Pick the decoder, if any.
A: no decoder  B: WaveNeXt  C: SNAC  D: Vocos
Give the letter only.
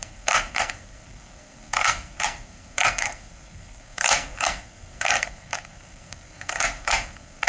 C